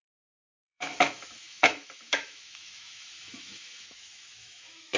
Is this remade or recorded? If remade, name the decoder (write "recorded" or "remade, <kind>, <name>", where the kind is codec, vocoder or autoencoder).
remade, autoencoder, DAC-VAE